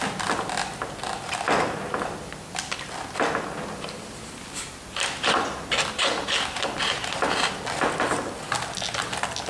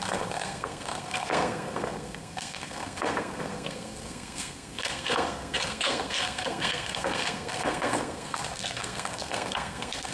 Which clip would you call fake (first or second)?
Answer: second